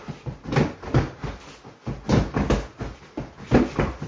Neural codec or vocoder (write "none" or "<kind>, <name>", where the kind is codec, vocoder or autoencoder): none